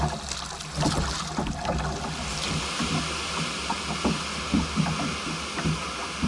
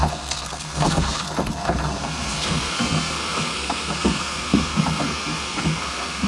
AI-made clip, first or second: second